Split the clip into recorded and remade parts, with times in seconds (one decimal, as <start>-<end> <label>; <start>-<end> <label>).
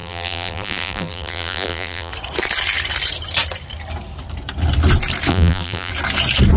0.0-2.1 remade; 2.1-5.3 recorded; 5.3-5.9 remade; 5.9-6.6 recorded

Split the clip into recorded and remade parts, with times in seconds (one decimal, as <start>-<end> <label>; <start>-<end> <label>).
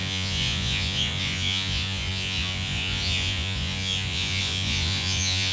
0.0-5.5 remade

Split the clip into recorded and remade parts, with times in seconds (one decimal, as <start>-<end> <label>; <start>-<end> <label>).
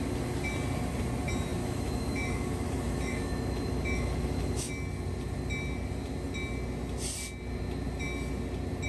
0.0-1.6 recorded; 1.6-4.7 remade; 4.7-8.9 recorded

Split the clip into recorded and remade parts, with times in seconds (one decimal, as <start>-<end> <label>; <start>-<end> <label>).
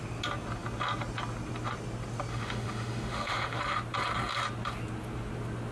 0.0-2.3 recorded; 2.3-3.6 remade; 3.6-5.7 recorded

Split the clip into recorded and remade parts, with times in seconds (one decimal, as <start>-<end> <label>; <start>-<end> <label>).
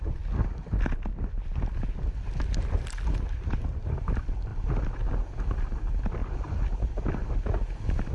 0.0-8.1 recorded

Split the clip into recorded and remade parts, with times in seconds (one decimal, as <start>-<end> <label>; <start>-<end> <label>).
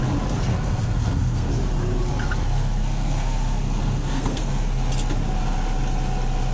0.0-0.5 recorded; 0.5-1.5 remade; 1.5-2.4 recorded; 2.4-4.5 remade; 4.5-6.5 recorded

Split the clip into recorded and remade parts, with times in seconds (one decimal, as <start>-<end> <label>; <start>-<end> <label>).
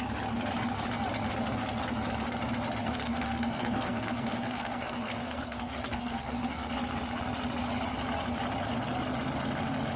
0.0-2.8 recorded; 2.8-6.7 remade; 6.7-10.0 recorded